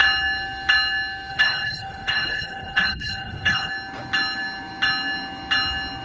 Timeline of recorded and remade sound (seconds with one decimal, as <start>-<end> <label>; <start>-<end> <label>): 0.0-1.3 recorded; 1.3-3.7 remade; 3.7-6.0 recorded